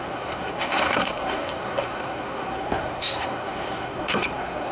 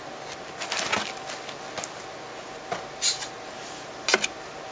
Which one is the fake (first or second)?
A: first